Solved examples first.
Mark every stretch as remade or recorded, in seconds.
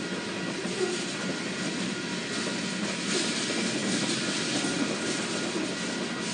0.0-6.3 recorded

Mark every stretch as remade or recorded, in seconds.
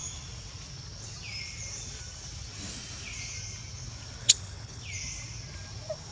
0.0-4.2 recorded; 4.2-4.8 remade; 4.8-6.1 recorded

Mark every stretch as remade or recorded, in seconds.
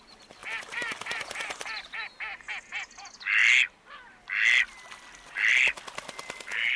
0.0-6.8 recorded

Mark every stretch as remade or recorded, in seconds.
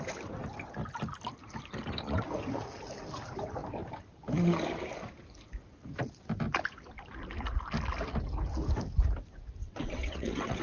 0.0-9.6 recorded; 9.6-10.6 remade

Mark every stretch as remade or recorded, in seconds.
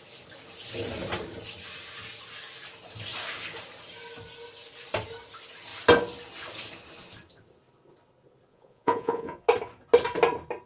0.0-8.5 recorded; 8.5-9.4 remade; 9.4-10.7 recorded